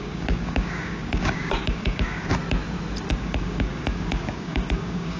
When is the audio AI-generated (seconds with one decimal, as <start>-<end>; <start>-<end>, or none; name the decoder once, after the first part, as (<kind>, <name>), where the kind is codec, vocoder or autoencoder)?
0.0-2.3 (codec, DAC); 3.1-5.2